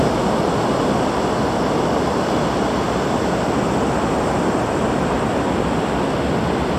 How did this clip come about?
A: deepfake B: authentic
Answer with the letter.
B